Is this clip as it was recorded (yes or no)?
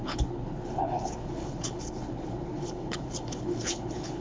no